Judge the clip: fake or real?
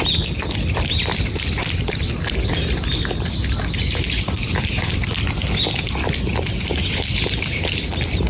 real